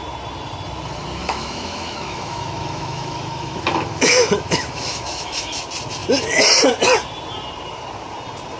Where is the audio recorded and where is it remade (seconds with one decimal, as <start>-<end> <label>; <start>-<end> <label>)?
0.0-1.2 recorded; 1.2-5.6 remade; 5.6-8.6 recorded